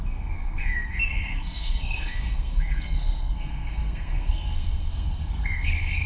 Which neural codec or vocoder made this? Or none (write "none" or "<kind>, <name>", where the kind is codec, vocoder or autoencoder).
codec, SNAC